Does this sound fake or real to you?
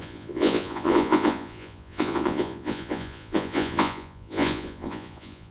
fake